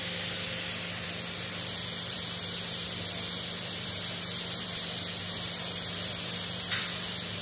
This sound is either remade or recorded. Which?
remade